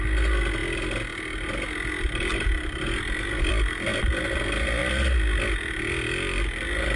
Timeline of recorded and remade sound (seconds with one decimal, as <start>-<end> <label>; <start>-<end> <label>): 0.0-7.0 recorded